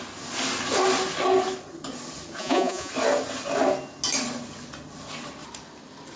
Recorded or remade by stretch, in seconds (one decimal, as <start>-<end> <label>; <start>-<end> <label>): 0.0-2.4 recorded; 2.4-2.9 remade; 2.9-6.2 recorded